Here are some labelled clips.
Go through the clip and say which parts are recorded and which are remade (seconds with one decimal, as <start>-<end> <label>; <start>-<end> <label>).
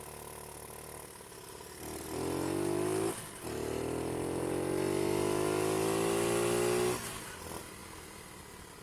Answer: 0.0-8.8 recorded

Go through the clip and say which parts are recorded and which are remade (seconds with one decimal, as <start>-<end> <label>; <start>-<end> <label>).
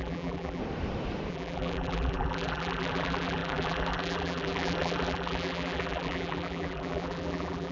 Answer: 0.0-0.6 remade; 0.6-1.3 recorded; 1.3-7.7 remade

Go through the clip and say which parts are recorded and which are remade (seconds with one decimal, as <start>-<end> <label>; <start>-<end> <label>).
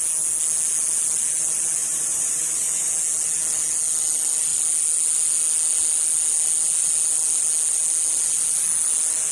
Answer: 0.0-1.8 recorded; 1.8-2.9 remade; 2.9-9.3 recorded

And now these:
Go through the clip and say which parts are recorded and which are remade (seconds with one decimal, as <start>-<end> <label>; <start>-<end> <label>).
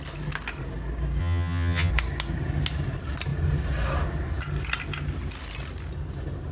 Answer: 0.0-1.2 recorded; 1.2-1.9 remade; 1.9-6.5 recorded